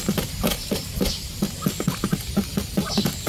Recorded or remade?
recorded